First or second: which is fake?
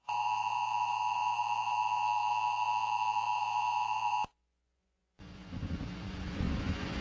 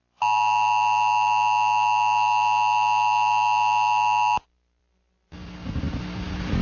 first